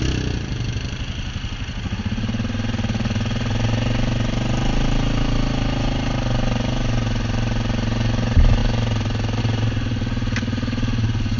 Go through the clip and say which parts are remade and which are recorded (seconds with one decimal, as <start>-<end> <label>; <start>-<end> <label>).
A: 0.0-11.4 recorded